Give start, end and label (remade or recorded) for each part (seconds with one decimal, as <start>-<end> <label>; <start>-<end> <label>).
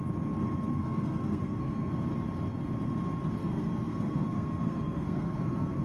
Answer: 0.0-0.7 recorded; 0.7-1.9 remade; 1.9-3.4 recorded; 3.4-5.8 remade